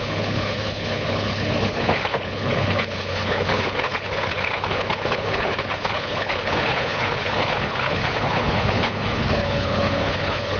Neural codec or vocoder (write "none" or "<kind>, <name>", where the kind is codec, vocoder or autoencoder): codec, HILCodec